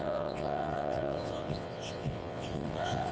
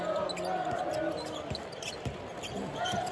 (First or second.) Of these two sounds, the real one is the second